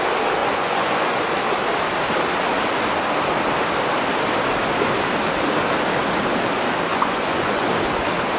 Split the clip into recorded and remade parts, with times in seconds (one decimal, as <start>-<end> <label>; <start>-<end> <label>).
0.0-0.4 recorded; 0.4-1.2 remade; 1.2-6.9 recorded; 6.9-7.7 remade; 7.7-8.4 recorded